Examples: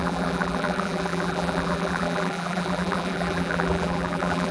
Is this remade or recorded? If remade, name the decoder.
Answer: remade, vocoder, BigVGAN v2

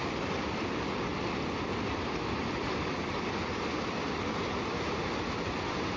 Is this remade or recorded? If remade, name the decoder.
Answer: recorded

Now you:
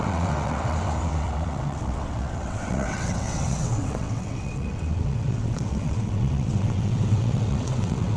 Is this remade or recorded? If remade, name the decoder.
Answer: remade, vocoder, WaveNeXt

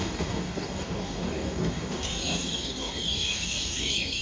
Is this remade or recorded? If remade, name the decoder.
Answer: remade, codec, DAC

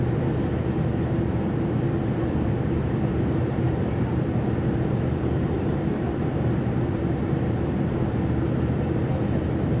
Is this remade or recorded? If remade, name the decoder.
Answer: remade, vocoder, BigVGAN v2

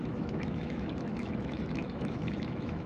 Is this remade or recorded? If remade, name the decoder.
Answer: remade, autoencoder, DAC-VAE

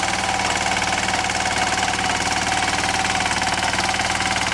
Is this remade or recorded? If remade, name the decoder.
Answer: recorded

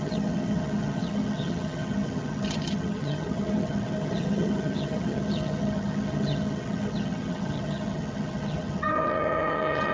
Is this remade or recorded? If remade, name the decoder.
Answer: remade, vocoder, HiFi-GAN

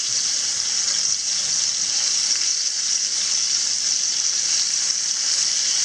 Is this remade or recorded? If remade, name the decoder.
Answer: recorded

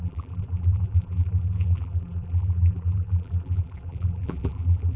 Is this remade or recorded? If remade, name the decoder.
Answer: remade, vocoder, BigVGAN v2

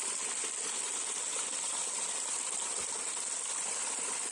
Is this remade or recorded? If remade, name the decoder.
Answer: recorded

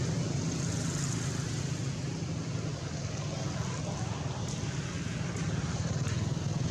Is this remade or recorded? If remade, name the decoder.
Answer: recorded